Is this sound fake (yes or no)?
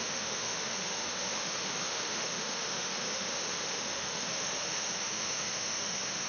yes